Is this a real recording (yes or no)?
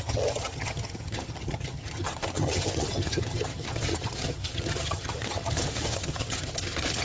no